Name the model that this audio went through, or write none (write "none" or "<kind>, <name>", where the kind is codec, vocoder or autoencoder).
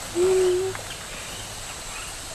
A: none